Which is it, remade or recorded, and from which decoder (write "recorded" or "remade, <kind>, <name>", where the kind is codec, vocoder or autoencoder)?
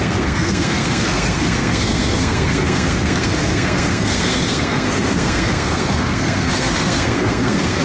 remade, codec, SNAC